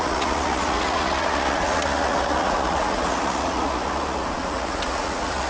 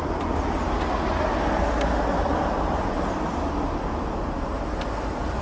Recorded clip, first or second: second